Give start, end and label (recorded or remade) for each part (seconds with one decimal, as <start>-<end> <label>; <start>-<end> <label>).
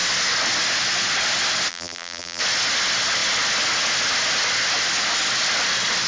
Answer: 0.0-1.7 recorded; 1.7-2.4 remade; 2.4-6.1 recorded